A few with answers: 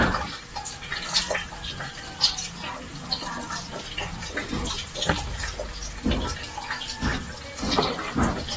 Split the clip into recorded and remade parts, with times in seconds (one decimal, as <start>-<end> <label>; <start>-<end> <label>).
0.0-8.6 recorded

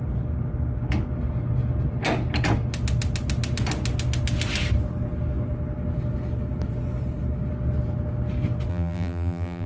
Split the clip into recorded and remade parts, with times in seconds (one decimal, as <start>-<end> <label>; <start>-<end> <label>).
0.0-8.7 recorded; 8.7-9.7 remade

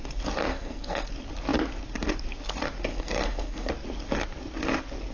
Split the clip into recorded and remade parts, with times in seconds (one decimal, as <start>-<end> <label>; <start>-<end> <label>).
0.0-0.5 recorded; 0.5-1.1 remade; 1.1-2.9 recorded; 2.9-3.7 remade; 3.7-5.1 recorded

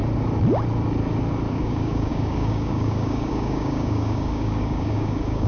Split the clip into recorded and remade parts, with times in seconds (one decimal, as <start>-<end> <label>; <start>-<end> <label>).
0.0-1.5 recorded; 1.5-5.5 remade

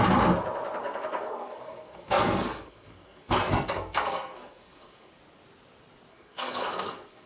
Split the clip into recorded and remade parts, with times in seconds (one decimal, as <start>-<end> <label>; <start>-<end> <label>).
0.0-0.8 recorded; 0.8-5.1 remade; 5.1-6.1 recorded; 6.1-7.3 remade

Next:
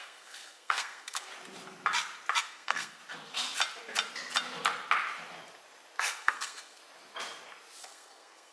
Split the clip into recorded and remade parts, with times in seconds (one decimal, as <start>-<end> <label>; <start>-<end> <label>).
0.0-1.3 remade; 1.3-2.4 recorded; 2.4-3.0 remade; 3.0-6.0 recorded; 6.0-6.8 remade; 6.8-7.8 recorded; 7.8-8.5 remade

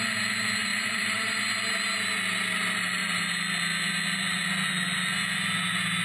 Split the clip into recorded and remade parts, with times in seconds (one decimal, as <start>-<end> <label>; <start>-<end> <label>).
0.0-0.7 recorded; 0.7-1.4 remade; 1.4-6.0 recorded